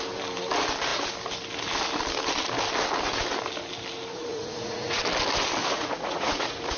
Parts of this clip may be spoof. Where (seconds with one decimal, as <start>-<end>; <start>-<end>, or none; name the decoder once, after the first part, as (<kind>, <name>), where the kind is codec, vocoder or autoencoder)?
4.1-5.0 (vocoder, Vocos); 5.6-6.8